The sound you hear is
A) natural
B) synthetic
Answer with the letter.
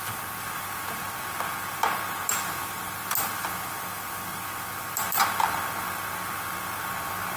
A